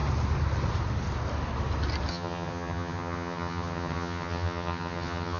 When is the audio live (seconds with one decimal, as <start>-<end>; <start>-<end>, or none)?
0.0-2.1